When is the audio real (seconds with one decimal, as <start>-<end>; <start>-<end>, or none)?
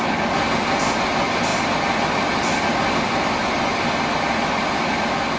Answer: 0.0-5.4